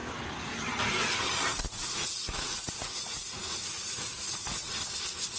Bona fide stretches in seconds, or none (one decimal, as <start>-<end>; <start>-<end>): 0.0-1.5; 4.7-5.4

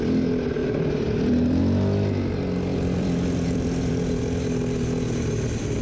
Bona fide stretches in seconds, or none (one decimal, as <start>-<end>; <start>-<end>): 0.0-0.6; 1.6-2.7; 4.1-5.8

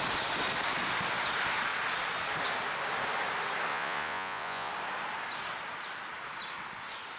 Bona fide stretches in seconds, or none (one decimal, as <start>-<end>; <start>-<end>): 0.0-3.7; 4.7-7.2

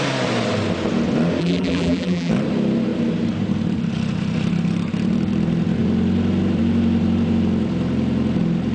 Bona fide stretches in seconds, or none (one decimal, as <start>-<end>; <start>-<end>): 0.0-1.4; 2.3-8.7

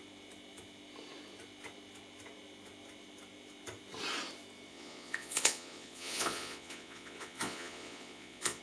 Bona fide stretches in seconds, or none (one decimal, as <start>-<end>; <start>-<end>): 0.0-4.7

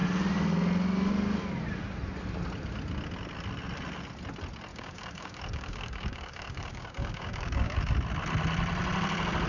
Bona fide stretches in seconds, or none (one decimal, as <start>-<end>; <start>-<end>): 0.0-4.7; 7.9-9.5

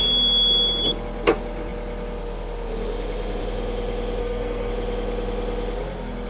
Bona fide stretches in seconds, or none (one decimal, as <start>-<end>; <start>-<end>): 0.0-4.2; 4.7-6.3